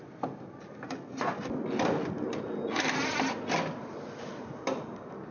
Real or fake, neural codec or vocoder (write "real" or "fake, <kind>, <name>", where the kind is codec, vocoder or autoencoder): real